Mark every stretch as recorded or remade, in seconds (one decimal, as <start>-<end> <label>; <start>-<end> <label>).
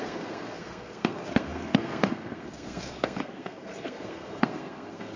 0.0-5.2 remade